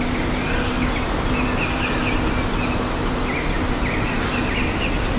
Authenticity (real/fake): real